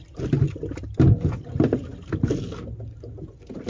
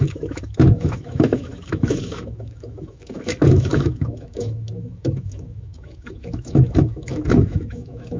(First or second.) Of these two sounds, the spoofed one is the second